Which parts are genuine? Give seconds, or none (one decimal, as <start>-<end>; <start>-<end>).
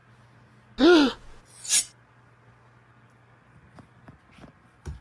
0.0-5.0